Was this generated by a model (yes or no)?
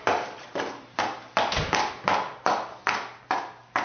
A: no